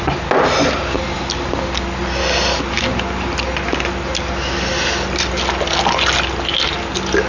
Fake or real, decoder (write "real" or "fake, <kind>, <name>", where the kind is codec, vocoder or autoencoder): real